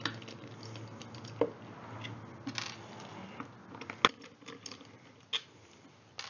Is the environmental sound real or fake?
real